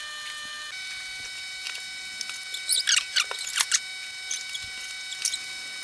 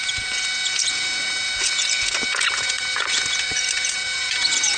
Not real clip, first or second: second